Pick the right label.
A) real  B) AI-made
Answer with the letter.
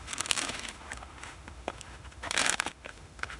B